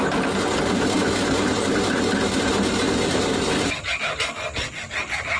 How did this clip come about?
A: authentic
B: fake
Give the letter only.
A